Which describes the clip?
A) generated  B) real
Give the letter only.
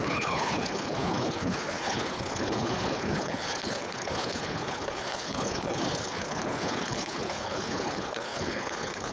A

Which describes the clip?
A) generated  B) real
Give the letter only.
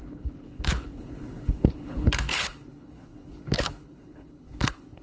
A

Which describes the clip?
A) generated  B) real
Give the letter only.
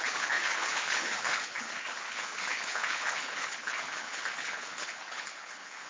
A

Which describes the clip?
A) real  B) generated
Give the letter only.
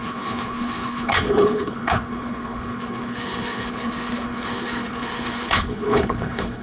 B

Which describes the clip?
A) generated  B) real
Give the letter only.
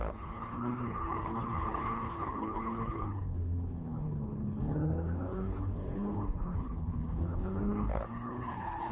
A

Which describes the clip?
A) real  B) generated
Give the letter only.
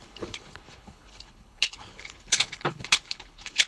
B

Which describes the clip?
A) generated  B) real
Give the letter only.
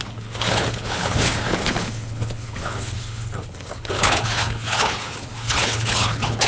A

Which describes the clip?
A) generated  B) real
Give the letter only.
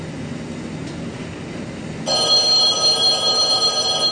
B